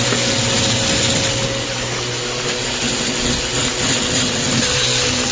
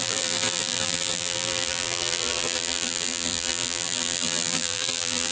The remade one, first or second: second